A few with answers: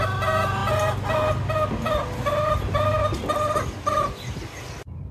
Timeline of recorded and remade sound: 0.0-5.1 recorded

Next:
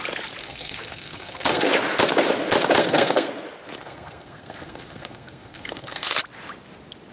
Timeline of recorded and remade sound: 0.0-0.4 recorded; 0.4-1.7 remade; 1.7-2.8 recorded; 2.8-3.3 remade; 3.3-3.8 recorded; 3.8-6.1 remade; 6.1-7.1 recorded

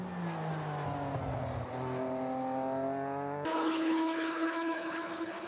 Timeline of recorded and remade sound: 0.0-3.5 recorded; 3.5-5.5 remade

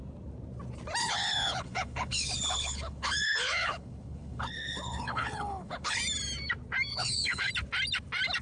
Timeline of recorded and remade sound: 0.0-1.0 recorded; 1.0-6.0 remade; 6.0-6.9 recorded; 6.9-7.5 remade; 7.5-8.4 recorded

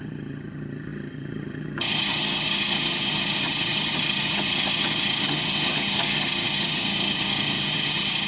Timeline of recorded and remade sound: 0.0-8.3 remade

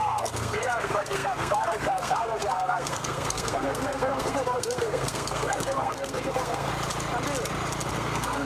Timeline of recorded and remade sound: 0.0-6.7 remade; 6.7-7.9 recorded; 7.9-8.5 remade

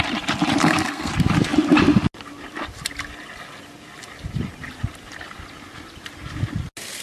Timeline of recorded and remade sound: 0.0-0.6 recorded; 0.6-1.1 remade; 1.1-7.0 recorded

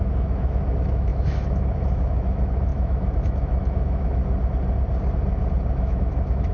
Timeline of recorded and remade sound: 0.0-4.2 remade; 4.2-5.8 recorded; 5.8-6.5 remade